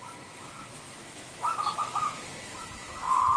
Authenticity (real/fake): fake